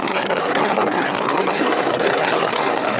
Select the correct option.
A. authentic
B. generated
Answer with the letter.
B